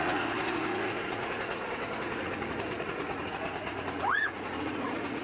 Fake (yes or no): yes